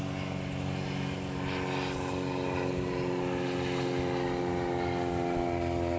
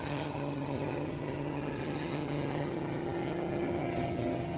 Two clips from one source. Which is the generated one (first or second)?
second